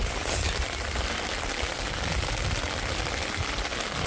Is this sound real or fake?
real